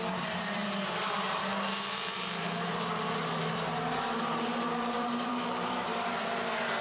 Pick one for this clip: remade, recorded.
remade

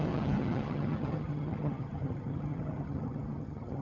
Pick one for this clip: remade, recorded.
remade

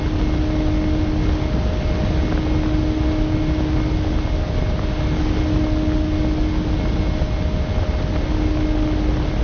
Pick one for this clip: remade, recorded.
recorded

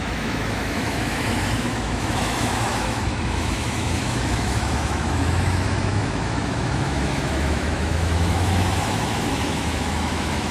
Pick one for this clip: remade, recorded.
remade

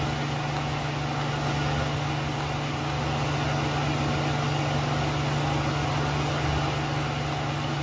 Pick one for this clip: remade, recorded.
recorded